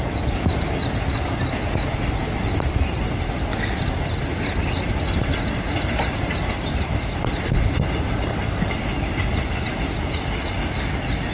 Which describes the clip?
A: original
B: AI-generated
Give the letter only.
A